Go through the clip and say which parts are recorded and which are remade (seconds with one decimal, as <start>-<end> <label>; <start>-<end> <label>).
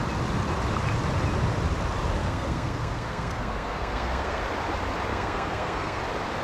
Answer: 0.0-2.2 recorded; 2.2-4.4 remade; 4.4-5.1 recorded; 5.1-6.0 remade; 6.0-6.4 recorded